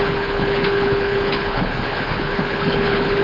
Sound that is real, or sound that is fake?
fake